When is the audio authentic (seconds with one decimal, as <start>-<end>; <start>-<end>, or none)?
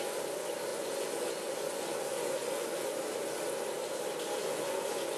0.0-0.7; 2.9-4.4